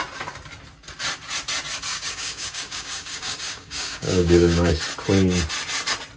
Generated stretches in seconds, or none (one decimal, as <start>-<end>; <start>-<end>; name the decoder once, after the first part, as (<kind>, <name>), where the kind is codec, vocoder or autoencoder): 1.9-4.7 (codec, DAC)